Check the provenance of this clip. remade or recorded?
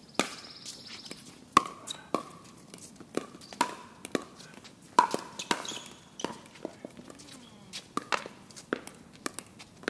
recorded